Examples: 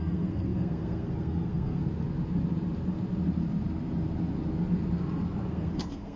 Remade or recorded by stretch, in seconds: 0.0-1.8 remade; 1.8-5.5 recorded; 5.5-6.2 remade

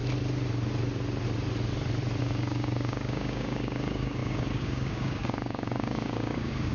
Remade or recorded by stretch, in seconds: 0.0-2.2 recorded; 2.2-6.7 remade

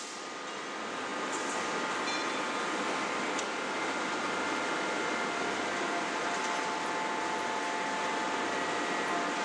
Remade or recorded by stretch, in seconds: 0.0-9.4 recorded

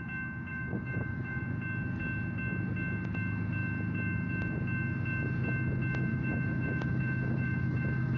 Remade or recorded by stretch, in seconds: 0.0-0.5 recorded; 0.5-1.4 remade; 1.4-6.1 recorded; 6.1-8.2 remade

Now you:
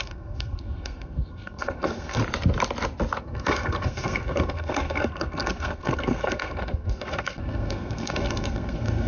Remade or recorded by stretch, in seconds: 0.0-2.2 remade; 2.2-3.2 recorded; 3.2-9.1 remade

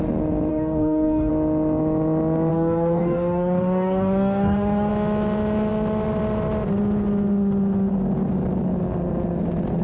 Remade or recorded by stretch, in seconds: 0.0-0.5 recorded; 0.5-1.3 remade; 1.3-2.5 recorded; 2.5-4.9 remade; 4.9-9.8 recorded